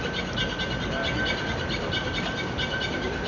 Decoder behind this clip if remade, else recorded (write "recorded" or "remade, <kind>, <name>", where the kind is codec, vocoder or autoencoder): recorded